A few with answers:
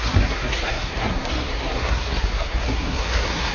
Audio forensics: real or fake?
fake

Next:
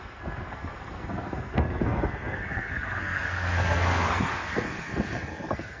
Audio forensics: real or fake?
fake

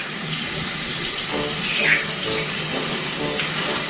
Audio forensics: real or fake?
real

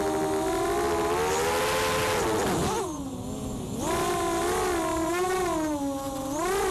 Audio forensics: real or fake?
real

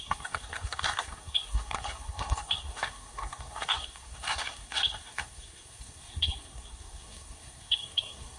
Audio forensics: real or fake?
fake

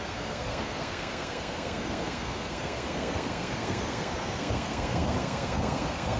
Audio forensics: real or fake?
fake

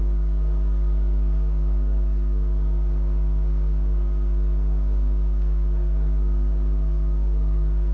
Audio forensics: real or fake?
fake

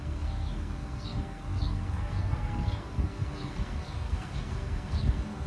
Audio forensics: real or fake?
fake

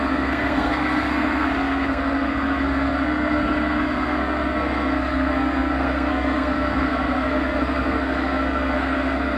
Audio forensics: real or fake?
fake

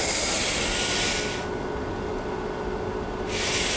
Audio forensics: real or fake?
real